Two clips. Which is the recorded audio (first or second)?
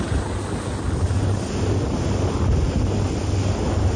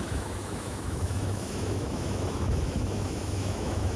first